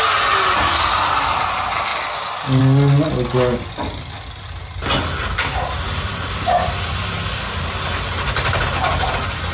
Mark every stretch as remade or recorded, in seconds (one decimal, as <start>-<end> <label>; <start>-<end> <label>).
0.0-9.5 recorded